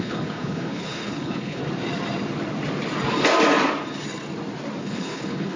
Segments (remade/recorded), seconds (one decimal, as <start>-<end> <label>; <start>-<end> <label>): 0.0-1.6 remade; 1.6-4.8 recorded; 4.8-5.6 remade